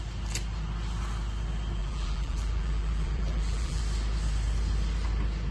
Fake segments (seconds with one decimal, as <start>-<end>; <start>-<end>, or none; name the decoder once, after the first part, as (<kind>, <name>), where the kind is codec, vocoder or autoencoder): 1.8-3.8 (vocoder, BigVGAN v2)